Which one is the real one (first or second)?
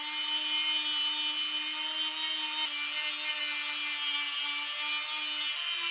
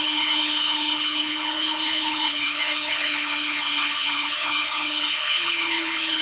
first